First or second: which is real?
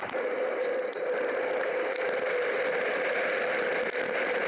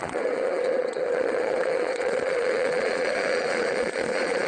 first